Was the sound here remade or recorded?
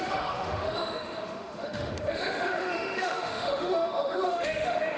remade